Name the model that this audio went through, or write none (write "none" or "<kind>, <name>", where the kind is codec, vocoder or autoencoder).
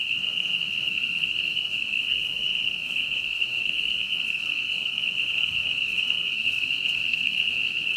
codec, SNAC